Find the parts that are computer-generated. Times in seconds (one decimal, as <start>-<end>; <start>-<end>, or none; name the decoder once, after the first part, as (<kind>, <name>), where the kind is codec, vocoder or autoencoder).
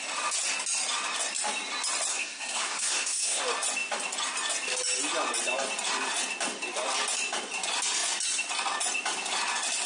2.1-3.4 (codec, SNAC)